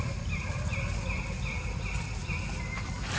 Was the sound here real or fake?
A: real